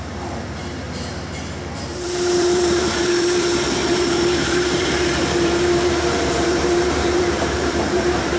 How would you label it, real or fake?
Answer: fake